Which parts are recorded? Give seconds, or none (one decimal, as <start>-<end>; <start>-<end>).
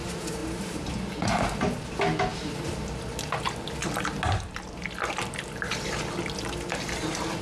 0.0-7.4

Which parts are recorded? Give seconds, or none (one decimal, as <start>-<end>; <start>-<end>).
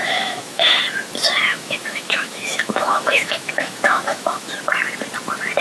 0.8-1.5; 4.5-5.6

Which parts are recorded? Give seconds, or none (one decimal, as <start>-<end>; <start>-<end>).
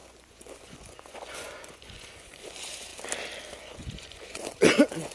2.9-3.6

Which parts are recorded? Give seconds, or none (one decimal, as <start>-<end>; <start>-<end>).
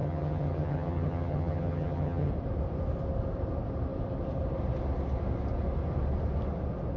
2.3-7.0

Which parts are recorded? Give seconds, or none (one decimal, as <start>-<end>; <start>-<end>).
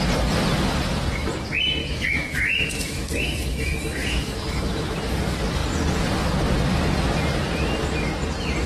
0.0-1.8; 5.1-8.7